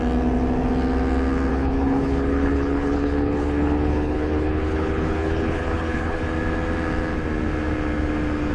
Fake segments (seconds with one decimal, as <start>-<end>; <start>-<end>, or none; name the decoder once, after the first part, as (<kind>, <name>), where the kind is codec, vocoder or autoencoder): 1.5-6.2 (codec, HILCodec)